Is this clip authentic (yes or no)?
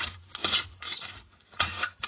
no